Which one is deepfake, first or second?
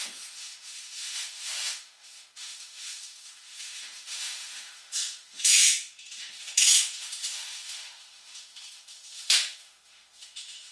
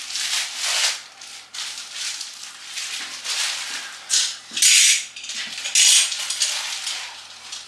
first